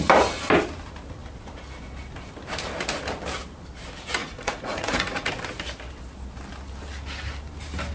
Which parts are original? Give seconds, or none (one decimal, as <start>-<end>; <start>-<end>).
0.0-4.2; 5.3-7.9

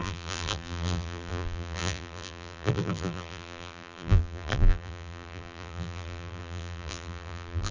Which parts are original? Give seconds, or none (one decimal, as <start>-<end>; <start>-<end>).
none

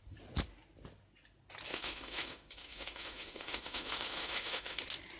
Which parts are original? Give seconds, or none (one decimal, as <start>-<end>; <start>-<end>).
0.0-1.7; 4.8-5.2

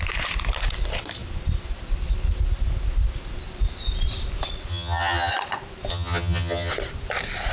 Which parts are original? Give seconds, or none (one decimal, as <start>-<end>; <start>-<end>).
0.0-4.7; 5.3-5.9; 6.7-7.5